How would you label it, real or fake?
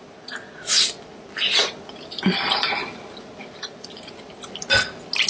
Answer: real